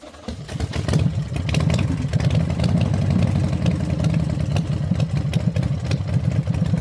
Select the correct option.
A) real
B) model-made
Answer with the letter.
A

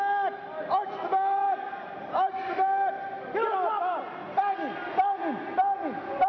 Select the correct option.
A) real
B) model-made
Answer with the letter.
A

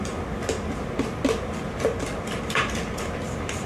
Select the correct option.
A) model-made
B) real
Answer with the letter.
B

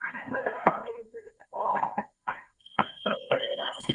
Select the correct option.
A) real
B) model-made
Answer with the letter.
B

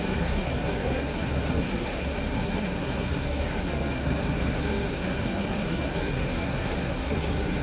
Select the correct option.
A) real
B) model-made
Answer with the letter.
B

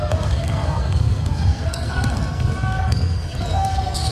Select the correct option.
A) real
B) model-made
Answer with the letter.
B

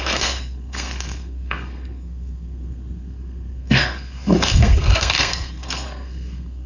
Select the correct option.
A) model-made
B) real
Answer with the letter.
A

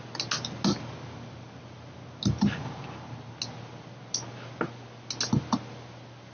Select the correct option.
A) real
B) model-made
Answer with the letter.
A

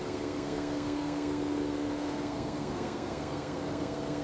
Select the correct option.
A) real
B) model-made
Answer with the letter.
B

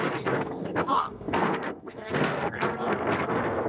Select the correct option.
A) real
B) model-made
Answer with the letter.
B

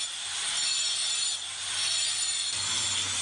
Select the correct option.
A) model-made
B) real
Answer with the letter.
B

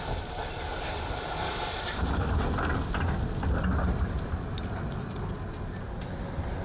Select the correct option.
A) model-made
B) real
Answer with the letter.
B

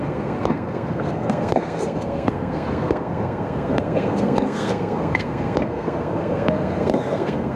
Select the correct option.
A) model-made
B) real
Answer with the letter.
A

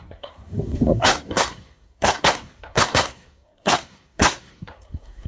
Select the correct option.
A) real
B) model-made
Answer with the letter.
B